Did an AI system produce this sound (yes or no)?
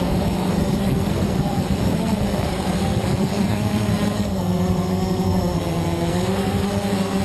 yes